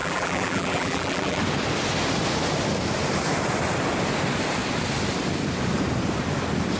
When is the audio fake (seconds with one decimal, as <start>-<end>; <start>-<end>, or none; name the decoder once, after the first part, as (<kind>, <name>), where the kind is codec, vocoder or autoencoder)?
0.0-1.4 (vocoder, BigVGAN v2)